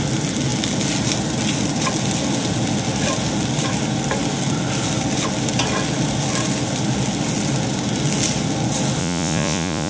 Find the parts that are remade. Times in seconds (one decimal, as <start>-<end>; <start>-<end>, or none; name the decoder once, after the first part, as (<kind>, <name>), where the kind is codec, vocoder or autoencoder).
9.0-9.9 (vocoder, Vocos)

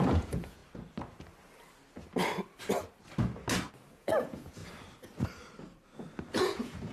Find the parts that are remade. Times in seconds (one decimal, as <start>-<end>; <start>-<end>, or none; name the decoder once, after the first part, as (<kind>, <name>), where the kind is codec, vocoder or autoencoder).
0.0-0.6 (vocoder, Vocos); 3.9-4.6; 6.3-6.9

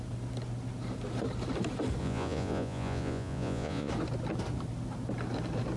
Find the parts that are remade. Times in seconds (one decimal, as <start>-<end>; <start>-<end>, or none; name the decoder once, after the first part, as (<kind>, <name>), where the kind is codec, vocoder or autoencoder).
2.0-3.9 (vocoder, Vocos)